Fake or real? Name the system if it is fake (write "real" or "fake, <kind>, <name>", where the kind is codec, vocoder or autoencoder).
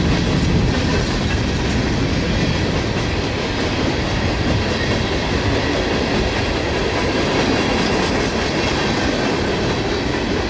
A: real